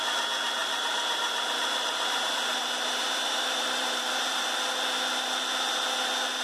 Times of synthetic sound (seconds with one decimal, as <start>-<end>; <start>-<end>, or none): 0.6-4.4